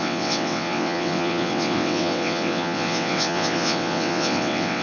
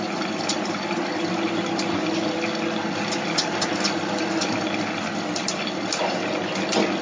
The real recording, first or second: second